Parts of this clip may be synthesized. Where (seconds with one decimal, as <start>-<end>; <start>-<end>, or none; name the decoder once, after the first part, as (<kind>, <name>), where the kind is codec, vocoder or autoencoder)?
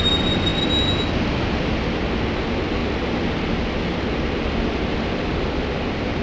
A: none